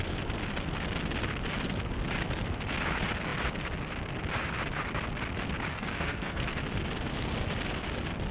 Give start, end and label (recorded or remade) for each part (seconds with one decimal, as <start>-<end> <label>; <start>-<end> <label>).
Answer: 0.0-5.7 recorded; 5.7-6.6 remade; 6.6-8.3 recorded

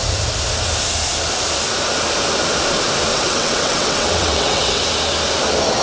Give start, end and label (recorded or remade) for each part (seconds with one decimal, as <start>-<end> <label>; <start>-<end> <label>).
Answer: 0.0-3.1 recorded; 3.1-4.8 remade; 4.8-5.8 recorded

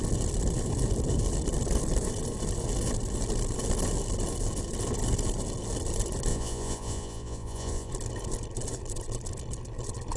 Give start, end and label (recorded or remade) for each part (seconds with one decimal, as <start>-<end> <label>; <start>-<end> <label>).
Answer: 0.0-6.3 recorded; 6.3-7.9 remade; 7.9-10.2 recorded

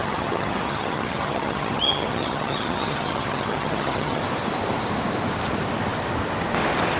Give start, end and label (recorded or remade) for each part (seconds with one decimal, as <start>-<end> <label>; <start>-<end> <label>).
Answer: 0.0-4.2 remade; 4.2-7.0 recorded

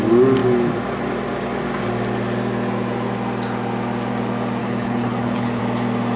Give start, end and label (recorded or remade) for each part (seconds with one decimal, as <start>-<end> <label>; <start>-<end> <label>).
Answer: 0.0-4.6 recorded; 4.6-5.6 remade; 5.6-6.2 recorded

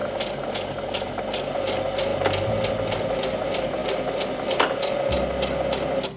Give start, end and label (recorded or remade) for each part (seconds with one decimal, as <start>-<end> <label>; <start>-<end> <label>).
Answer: 0.0-6.2 recorded

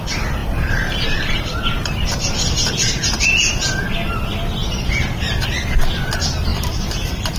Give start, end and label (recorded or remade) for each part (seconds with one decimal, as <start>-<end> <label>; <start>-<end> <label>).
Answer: 0.0-0.4 recorded; 0.4-3.2 remade; 3.2-4.6 recorded; 4.6-5.3 remade; 5.3-6.5 recorded; 6.5-7.4 remade

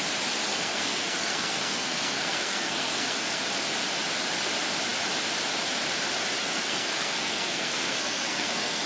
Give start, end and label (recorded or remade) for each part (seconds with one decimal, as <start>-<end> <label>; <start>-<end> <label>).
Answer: 0.0-0.5 recorded; 0.5-3.4 remade; 3.4-6.4 recorded; 6.4-8.9 remade